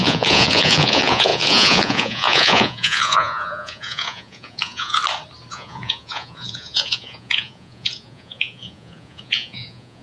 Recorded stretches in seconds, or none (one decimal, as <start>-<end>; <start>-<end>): 5.0-5.5